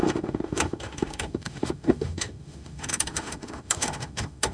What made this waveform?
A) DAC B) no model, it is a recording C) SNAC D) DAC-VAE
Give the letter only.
D